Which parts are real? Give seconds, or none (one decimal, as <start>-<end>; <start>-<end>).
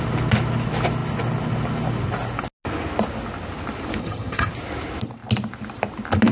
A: 0.0-4.0; 4.5-6.3